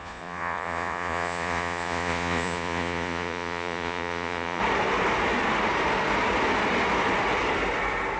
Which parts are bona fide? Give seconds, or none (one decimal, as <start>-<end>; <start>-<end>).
4.6-8.2